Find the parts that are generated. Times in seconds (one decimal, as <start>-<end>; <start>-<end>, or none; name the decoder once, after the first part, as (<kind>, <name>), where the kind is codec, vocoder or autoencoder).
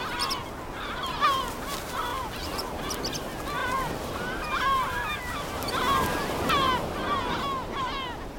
2.1-3.0 (vocoder, BigVGAN v2)